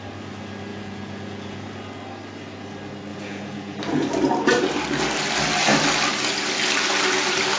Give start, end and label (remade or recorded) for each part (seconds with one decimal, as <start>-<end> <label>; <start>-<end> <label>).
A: 0.0-0.7 recorded; 0.7-1.6 remade; 1.6-3.1 recorded; 3.1-3.8 remade; 3.8-7.6 recorded